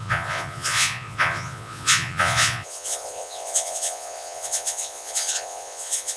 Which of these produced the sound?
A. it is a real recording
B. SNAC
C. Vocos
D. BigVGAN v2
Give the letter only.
C